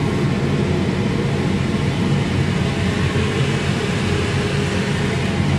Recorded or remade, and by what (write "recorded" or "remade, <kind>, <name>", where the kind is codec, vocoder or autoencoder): recorded